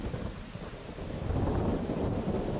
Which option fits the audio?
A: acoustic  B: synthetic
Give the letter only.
A